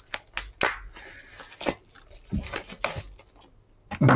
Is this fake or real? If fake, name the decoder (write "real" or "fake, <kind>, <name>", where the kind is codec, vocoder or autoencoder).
real